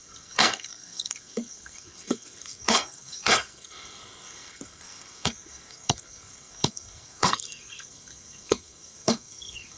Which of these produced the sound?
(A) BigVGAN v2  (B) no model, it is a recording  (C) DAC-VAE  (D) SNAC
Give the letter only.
D